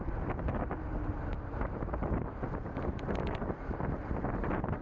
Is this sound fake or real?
real